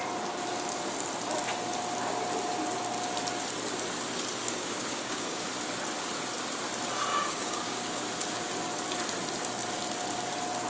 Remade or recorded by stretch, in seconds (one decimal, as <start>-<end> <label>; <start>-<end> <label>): 0.0-4.4 recorded; 4.4-5.5 remade; 5.5-7.1 recorded; 7.1-8.0 remade; 8.0-10.7 recorded